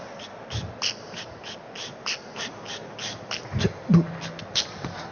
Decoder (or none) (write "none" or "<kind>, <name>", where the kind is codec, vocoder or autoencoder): none